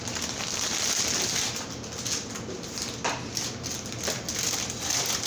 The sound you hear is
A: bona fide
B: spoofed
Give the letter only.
A